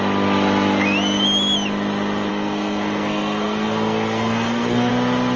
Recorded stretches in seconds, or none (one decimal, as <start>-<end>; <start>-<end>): 0.0-2.3; 4.9-5.4